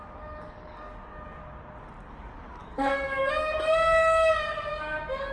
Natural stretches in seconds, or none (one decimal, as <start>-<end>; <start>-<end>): 1.4-2.0